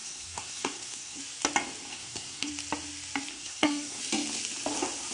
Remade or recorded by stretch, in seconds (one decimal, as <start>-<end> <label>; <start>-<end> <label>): 0.0-1.2 remade; 1.2-1.9 recorded; 1.9-2.5 remade; 2.5-3.3 recorded; 3.3-4.0 remade; 4.0-5.1 recorded